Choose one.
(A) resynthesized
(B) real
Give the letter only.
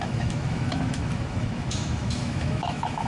A